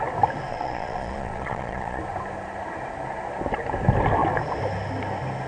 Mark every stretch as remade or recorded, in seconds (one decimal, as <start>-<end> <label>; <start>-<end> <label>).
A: 0.0-0.5 recorded; 0.5-2.0 remade; 2.0-5.5 recorded